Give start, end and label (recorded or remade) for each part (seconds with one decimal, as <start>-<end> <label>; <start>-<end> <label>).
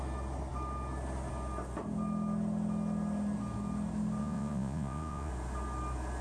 0.0-4.2 recorded; 4.2-5.3 remade; 5.3-6.2 recorded